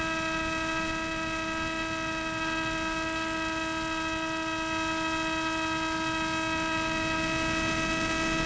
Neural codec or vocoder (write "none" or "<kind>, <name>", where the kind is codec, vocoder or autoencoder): none